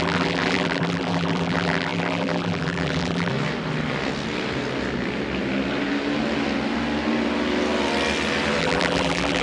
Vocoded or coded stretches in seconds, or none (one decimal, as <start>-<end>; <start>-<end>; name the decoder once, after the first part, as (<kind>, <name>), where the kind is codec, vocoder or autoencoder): 0.0-3.3 (vocoder, BigVGAN v2); 8.6-9.4